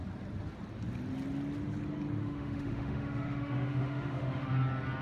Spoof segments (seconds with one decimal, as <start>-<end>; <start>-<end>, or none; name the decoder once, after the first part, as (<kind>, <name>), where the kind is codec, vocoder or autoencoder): 2.2-4.5 (autoencoder, DAC-VAE)